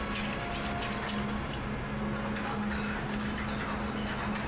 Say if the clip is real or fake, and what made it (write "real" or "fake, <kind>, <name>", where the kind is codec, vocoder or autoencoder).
real